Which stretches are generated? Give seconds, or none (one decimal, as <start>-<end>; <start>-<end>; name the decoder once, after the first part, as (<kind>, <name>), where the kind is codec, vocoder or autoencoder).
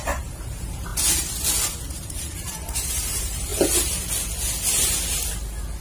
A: 0.0-0.9 (vocoder, BigVGAN v2); 1.9-3.5